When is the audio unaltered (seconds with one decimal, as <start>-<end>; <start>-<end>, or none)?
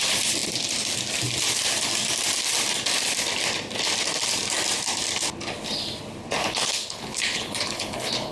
0.0-6.4